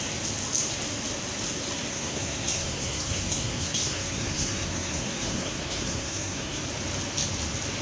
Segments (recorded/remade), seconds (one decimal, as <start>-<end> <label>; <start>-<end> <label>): 0.0-1.9 recorded; 1.9-6.6 remade; 6.6-7.8 recorded